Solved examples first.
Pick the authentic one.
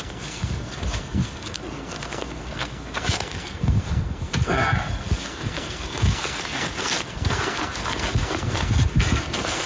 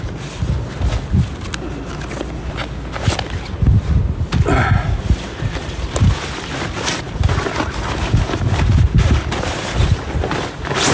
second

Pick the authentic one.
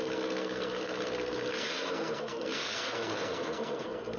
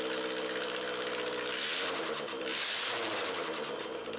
second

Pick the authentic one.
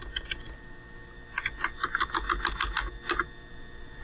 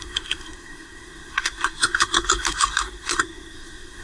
first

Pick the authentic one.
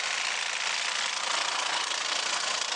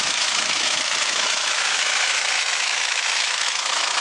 first